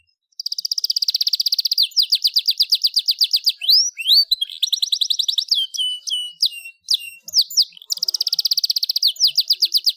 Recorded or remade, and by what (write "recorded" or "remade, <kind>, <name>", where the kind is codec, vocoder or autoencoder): recorded